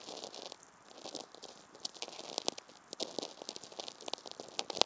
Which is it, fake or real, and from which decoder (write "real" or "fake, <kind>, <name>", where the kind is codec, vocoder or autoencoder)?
real